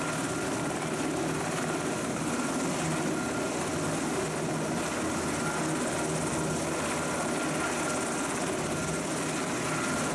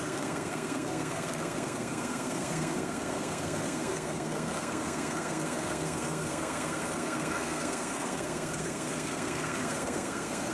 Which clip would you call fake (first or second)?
second